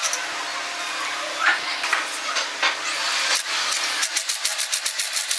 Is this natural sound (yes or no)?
yes